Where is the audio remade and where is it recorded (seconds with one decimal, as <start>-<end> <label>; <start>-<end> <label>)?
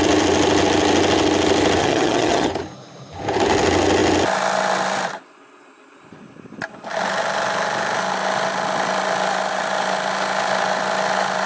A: 0.0-1.8 recorded; 1.8-2.5 remade; 2.5-11.5 recorded